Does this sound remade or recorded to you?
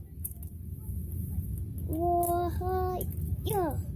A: recorded